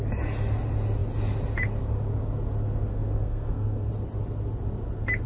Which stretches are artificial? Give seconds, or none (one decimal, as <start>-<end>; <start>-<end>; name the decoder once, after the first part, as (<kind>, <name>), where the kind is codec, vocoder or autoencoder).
2.9-3.9 (codec, SNAC)

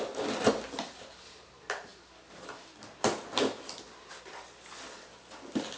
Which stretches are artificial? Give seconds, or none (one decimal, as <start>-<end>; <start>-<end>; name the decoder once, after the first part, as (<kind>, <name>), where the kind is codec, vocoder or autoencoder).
none